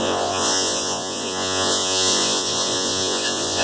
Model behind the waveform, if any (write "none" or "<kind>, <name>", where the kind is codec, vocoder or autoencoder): vocoder, Vocos